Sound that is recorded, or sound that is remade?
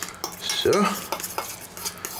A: recorded